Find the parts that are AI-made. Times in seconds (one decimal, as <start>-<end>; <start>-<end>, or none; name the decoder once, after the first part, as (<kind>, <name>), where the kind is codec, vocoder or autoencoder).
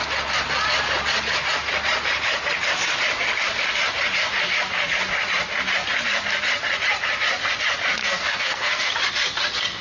8.0-8.9 (codec, SNAC)